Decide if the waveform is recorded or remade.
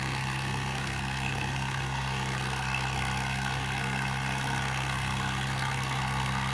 remade